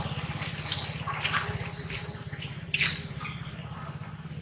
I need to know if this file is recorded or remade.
recorded